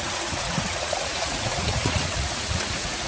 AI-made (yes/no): yes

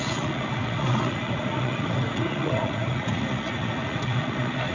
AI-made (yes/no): yes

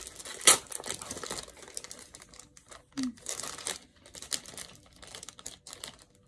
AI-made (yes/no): no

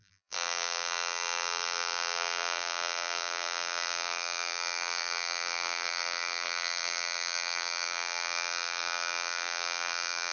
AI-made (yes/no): yes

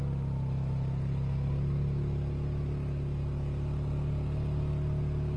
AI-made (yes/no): no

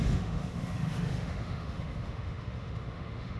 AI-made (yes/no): yes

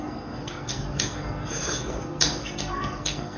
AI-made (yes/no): yes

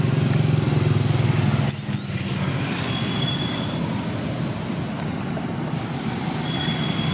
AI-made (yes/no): no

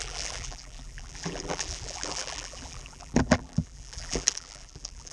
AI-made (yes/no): yes